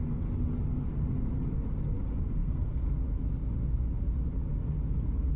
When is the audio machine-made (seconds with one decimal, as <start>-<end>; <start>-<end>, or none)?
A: 2.4-2.9